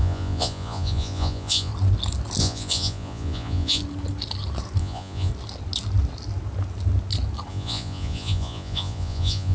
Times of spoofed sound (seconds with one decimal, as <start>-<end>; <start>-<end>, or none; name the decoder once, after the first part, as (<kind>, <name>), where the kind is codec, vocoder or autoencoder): 0.0-1.7 (vocoder, Vocos); 2.4-3.8; 4.8-5.3; 7.5-9.5